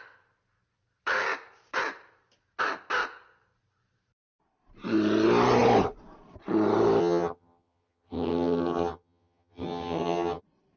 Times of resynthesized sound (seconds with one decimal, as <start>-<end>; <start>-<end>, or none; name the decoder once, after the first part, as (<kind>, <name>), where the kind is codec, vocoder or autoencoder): 7.0-10.4 (vocoder, HiFi-GAN)